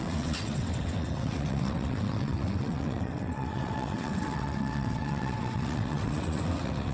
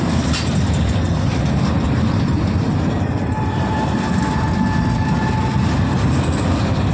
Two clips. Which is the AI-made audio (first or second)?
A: first